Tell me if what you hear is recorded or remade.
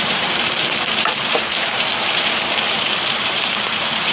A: remade